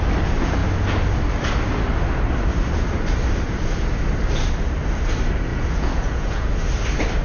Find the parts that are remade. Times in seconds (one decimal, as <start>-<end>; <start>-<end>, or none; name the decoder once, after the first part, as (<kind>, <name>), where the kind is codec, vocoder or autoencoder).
5.5-6.5 (vocoder, Vocos)